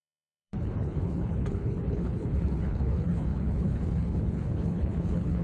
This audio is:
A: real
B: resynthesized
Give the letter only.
B